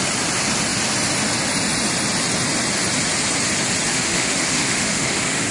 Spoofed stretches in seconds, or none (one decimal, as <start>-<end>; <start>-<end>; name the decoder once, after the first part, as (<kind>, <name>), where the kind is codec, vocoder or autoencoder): 3.9-5.5 (autoencoder, DAC-VAE)